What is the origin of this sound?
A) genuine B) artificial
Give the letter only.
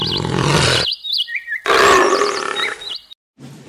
A